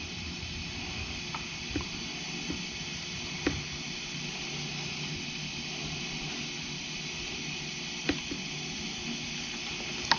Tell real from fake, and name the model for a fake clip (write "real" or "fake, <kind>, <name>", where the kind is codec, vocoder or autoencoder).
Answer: real